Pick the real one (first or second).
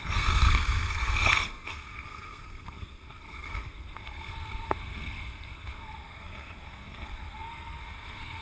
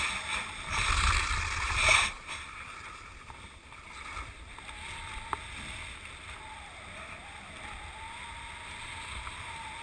second